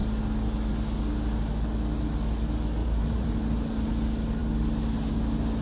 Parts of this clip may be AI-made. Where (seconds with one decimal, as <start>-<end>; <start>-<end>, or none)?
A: 2.8-3.9